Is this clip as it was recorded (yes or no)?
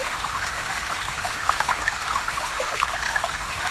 no